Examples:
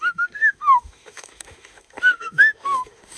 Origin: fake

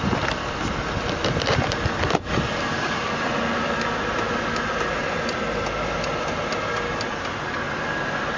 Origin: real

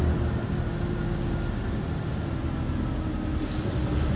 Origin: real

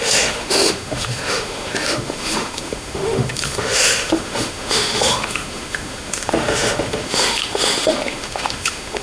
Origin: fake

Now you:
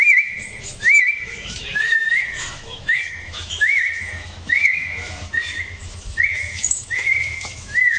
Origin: fake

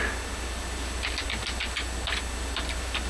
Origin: real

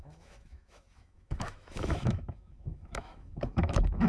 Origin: fake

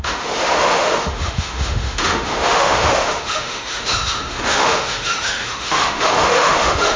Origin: fake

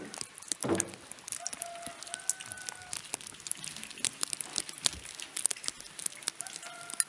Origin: real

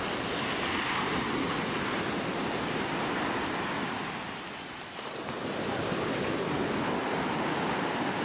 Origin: real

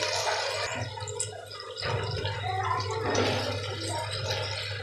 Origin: real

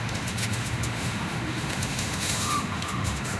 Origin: fake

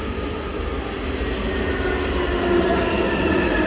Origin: real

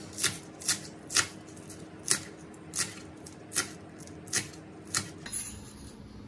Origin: real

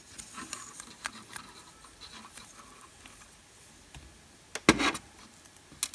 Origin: real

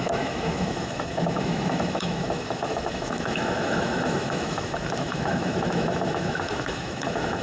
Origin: fake